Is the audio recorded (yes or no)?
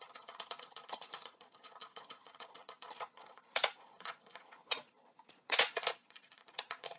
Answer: no